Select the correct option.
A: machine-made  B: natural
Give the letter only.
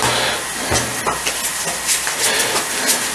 B